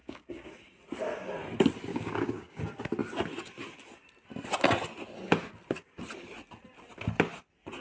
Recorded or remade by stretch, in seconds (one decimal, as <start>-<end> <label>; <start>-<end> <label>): 0.0-0.5 remade; 0.5-1.9 recorded; 1.9-2.6 remade; 2.6-7.8 recorded